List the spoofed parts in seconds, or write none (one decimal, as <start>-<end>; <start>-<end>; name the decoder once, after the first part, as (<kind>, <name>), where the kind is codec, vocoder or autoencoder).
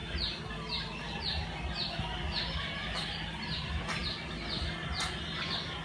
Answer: none